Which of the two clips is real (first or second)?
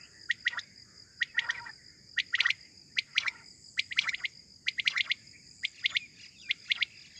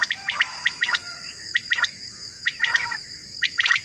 first